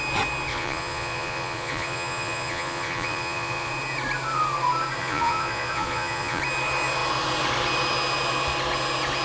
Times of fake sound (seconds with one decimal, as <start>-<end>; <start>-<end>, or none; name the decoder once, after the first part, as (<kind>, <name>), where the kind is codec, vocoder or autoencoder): 0.5-3.7 (vocoder, Vocos); 5.0-6.4